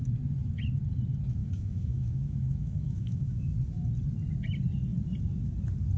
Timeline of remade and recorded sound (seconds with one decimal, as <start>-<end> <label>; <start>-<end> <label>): 0.0-1.4 recorded; 1.4-3.5 remade; 3.5-6.0 recorded